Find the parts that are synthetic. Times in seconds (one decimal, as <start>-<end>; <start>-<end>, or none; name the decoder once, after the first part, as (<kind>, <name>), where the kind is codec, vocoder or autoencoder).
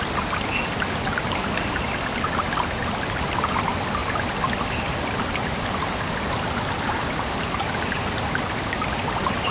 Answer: none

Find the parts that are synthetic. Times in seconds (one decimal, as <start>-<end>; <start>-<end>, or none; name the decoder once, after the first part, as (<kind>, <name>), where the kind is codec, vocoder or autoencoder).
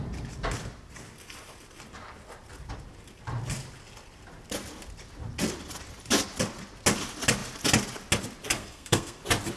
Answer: 8.6-9.2 (codec, SNAC)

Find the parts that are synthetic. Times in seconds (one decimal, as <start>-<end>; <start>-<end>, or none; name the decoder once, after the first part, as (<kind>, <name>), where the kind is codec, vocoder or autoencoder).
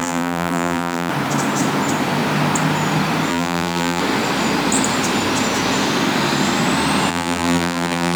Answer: 0.0-1.1 (vocoder, BigVGAN v2); 3.3-4.0; 7.1-8.2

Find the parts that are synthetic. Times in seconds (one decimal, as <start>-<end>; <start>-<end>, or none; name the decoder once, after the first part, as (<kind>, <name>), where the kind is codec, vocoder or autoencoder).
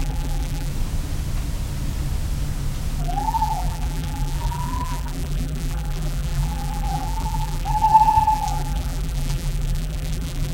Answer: 0.0-0.7 (vocoder, BigVGAN v2); 3.0-10.5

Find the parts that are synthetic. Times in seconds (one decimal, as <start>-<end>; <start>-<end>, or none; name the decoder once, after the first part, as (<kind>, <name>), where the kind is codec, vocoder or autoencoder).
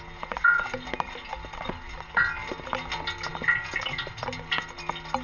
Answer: none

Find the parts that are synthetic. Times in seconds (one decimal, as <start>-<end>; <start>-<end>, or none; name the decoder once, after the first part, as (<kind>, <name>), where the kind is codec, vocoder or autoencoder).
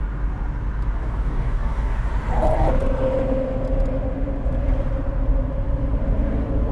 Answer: 1.0-2.1 (codec, DAC)